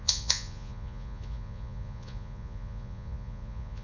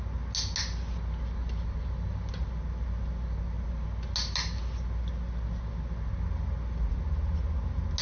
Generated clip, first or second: first